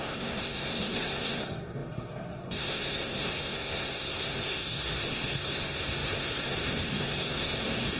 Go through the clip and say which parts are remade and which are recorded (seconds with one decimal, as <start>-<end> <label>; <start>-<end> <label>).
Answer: 0.0-8.0 remade